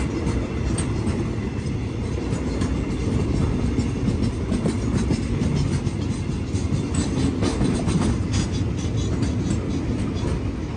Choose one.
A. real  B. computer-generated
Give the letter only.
A